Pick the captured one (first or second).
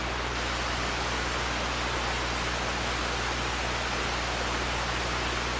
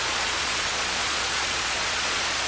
first